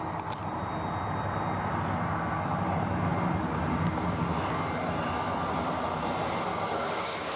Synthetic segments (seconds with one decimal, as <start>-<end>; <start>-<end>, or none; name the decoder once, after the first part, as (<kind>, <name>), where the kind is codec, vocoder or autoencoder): 6.5-7.4 (codec, DAC)

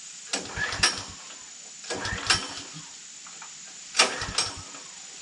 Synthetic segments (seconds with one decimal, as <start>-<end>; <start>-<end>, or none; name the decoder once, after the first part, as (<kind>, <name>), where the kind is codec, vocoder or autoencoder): none

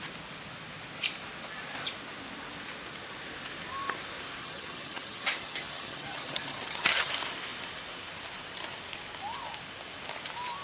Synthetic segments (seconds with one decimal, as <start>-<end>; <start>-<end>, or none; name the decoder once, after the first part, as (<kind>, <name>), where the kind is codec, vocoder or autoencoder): 4.4-7.1 (vocoder, HiFi-GAN)

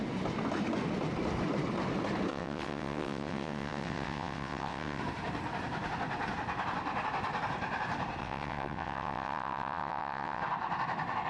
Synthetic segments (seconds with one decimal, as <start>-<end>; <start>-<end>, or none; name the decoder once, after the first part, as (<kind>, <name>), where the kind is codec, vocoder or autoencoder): 2.3-5.0 (vocoder, WaveNeXt); 8.2-10.4

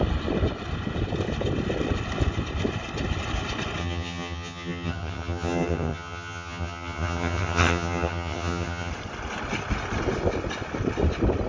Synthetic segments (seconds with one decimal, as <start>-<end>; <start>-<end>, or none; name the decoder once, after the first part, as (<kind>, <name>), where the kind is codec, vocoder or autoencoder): 3.8-8.9 (vocoder, HiFi-GAN)

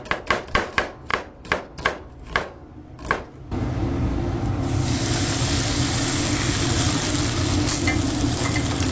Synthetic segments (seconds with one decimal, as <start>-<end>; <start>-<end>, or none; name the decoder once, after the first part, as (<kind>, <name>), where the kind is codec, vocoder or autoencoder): none